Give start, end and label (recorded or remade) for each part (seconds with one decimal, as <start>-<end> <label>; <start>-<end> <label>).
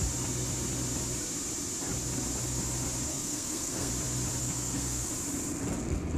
0.0-3.1 recorded; 3.1-3.9 remade; 3.9-4.4 recorded; 4.4-5.1 remade; 5.1-6.2 recorded